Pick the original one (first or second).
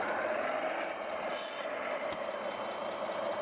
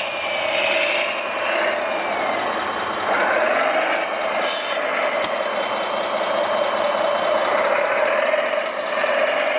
second